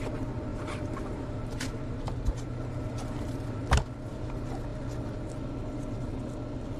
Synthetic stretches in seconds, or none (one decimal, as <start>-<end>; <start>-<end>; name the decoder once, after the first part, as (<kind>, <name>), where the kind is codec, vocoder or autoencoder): 0.5-3.8 (vocoder, BigVGAN v2)